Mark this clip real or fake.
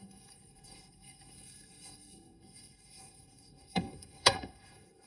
fake